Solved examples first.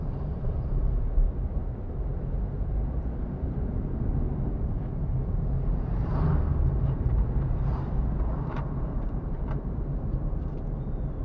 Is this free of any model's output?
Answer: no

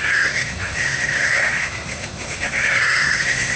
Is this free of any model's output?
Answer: no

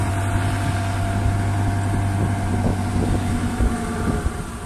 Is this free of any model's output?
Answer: yes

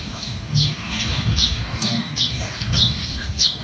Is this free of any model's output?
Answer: no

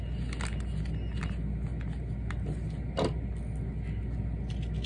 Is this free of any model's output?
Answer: yes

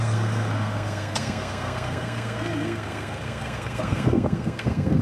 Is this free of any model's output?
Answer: no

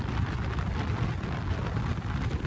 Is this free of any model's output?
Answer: yes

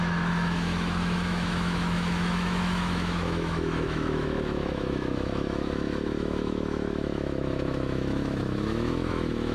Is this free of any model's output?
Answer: no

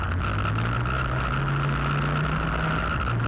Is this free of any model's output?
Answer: yes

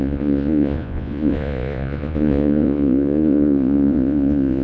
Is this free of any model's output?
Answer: no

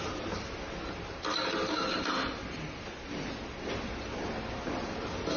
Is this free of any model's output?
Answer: yes